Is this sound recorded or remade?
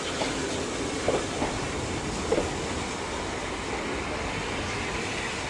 recorded